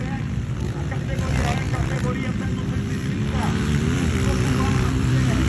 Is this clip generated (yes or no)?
yes